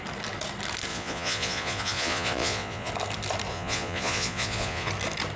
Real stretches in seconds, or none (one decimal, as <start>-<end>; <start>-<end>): 0.0-0.9; 2.9-3.5; 4.9-5.4